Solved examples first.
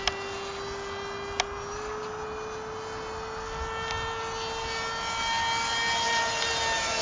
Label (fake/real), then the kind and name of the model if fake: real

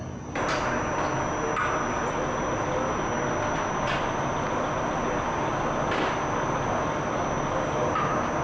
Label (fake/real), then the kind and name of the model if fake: real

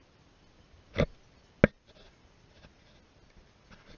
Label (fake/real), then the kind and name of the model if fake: real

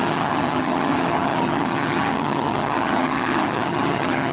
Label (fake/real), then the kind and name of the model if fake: fake, vocoder, HiFi-GAN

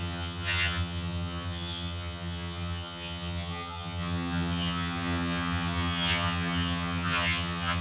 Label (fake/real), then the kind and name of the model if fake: fake, vocoder, HiFi-GAN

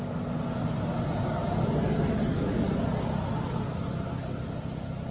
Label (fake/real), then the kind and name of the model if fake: real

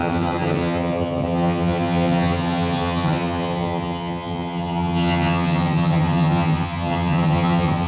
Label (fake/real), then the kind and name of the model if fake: fake, vocoder, HiFi-GAN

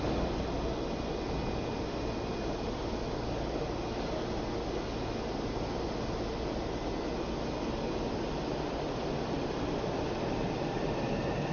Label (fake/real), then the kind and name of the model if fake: real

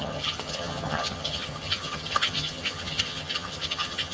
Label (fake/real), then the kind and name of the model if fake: fake, vocoder, HiFi-GAN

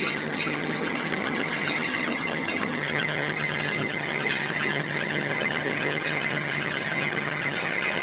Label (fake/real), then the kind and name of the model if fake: fake, vocoder, HiFi-GAN